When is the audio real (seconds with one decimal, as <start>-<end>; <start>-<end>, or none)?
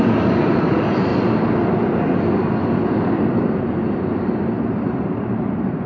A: 1.1-4.6